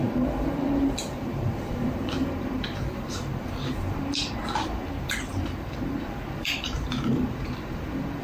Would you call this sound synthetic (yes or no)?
yes